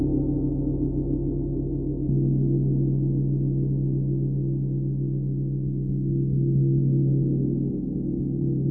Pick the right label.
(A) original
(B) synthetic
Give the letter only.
A